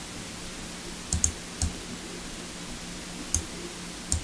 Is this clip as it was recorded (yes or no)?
yes